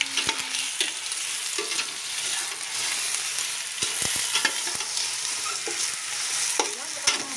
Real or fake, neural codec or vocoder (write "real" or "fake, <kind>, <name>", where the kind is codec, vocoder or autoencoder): real